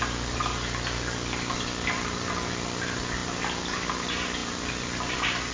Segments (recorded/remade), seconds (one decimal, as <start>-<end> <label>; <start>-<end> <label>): 0.0-5.5 recorded